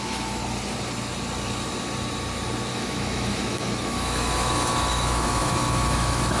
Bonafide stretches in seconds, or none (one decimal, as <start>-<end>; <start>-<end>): 0.4-2.7